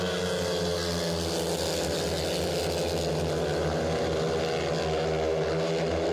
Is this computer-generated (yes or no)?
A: no